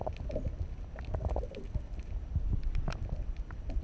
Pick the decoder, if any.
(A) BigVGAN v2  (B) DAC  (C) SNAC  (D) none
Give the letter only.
D